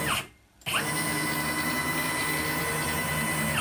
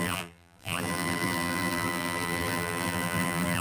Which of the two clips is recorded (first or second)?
first